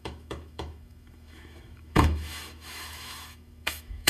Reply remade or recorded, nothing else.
remade